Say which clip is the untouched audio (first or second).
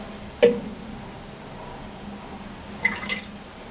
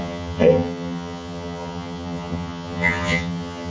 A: first